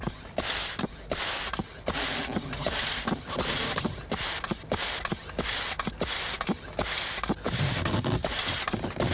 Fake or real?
real